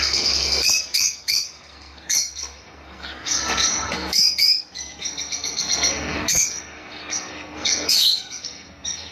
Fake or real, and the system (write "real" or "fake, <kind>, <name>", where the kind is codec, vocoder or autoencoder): fake, codec, SNAC